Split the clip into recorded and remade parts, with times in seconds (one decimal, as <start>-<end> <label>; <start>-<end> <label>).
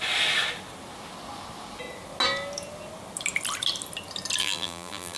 0.0-4.4 recorded; 4.4-5.2 remade